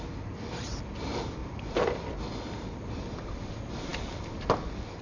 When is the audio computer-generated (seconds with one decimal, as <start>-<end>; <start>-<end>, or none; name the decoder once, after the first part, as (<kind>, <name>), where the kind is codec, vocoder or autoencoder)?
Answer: 1.4-2.0 (vocoder, BigVGAN v2)